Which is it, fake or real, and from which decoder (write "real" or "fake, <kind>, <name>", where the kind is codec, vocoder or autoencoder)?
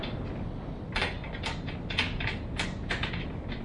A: real